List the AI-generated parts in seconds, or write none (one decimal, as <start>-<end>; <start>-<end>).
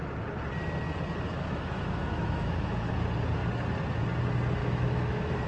1.3-2.9; 4.6-5.5